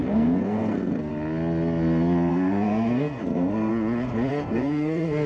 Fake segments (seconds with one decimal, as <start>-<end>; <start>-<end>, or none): 0.0-1.1; 2.3-3.7; 4.3-5.3